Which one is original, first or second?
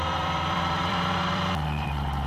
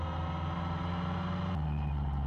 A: second